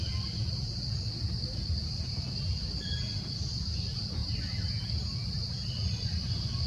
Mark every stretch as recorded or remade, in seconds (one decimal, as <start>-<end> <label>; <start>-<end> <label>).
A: 0.0-6.7 recorded